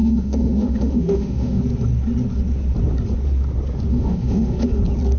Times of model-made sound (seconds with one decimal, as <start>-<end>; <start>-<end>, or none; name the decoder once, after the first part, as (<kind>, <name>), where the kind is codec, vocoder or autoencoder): 0.0-1.6 (autoencoder, DAC-VAE); 3.9-4.8